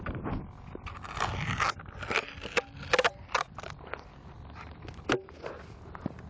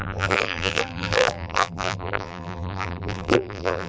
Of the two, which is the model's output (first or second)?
second